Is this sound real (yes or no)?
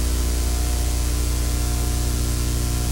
yes